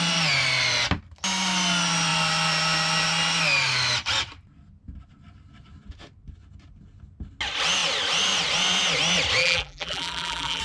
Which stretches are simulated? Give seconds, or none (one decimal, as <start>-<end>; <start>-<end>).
9.4-10.6